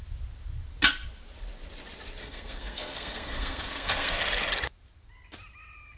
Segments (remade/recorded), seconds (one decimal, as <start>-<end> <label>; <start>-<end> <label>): 0.0-2.2 recorded; 2.2-4.2 remade; 4.2-6.0 recorded